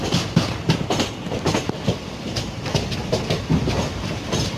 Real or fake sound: real